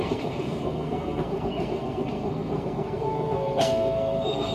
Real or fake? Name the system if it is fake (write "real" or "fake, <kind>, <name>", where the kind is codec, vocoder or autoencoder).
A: fake, codec, SNAC